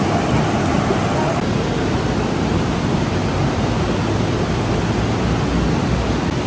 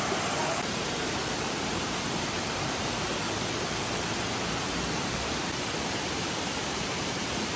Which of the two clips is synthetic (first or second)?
second